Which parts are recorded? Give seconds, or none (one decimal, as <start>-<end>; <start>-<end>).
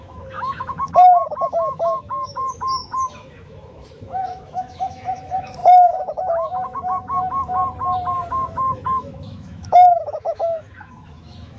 7.6-8.3